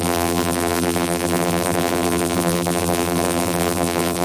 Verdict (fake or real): fake